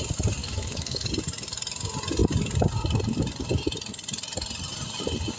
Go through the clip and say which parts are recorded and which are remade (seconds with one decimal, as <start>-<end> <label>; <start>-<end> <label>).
0.0-0.4 recorded; 0.4-1.1 remade; 1.1-5.4 recorded